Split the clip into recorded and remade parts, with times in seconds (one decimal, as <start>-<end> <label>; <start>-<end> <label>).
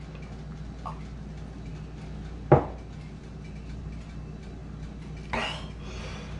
0.0-6.4 recorded